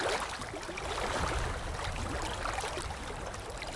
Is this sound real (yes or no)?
yes